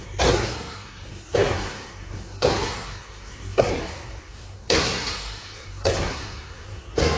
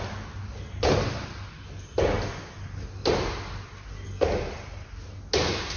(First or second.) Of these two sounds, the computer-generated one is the first